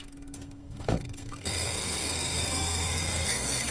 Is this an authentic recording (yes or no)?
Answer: no